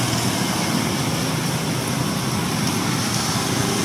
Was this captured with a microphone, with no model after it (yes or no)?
yes